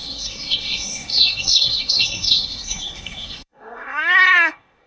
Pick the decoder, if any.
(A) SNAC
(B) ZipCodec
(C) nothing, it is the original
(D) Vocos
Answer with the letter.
A